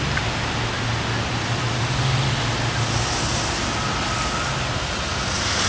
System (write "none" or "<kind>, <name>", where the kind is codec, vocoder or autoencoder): none